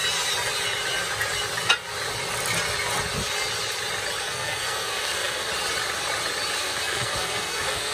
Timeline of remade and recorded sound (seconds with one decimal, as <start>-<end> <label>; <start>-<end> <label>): 0.0-4.2 recorded; 4.2-5.5 remade; 5.5-6.6 recorded; 6.6-7.9 remade